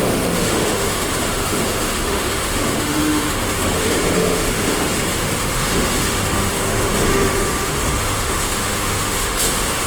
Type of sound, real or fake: fake